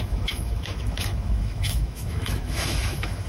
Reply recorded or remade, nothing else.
remade